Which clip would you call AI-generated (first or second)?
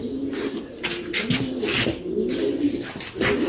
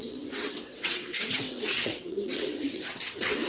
second